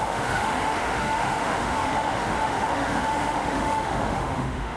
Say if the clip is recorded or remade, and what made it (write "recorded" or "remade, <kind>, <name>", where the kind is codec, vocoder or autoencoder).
remade, autoencoder, DAC-VAE